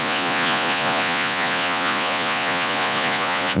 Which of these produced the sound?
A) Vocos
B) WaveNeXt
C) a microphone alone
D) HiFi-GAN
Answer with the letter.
A